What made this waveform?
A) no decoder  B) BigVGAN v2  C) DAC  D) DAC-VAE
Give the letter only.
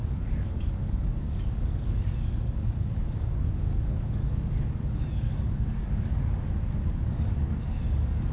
C